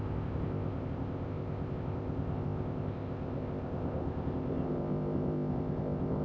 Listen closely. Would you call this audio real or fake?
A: fake